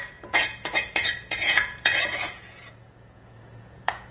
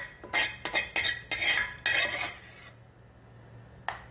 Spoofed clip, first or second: first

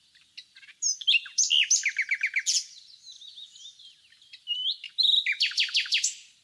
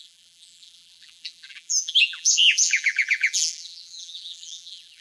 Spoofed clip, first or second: second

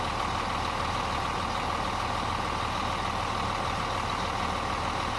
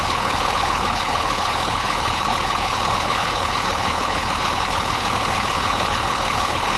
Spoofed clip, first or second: second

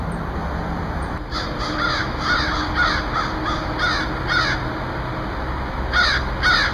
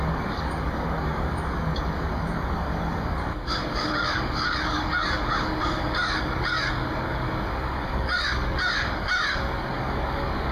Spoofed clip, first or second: second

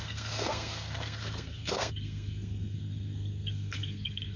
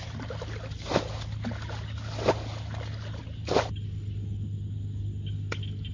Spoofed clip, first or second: first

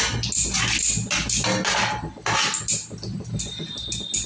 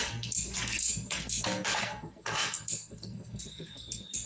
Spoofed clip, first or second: second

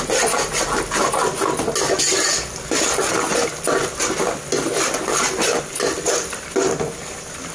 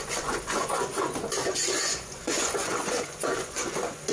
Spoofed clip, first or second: second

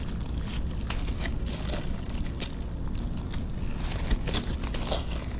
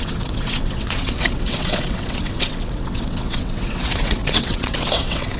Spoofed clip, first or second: second